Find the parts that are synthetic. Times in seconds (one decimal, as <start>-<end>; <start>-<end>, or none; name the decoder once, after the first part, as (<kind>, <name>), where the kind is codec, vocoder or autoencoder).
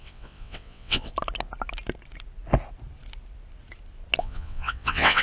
0.0-1.1 (vocoder, WaveNeXt); 4.2-5.2